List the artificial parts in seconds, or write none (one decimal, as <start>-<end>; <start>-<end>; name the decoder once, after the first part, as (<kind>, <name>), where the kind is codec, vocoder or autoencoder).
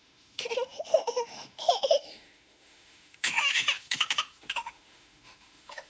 0.0-5.9 (autoencoder, DAC-VAE)